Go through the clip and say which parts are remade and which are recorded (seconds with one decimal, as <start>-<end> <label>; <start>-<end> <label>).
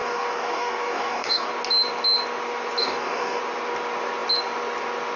0.0-1.5 remade; 1.5-2.8 recorded; 2.8-3.4 remade; 3.4-5.2 recorded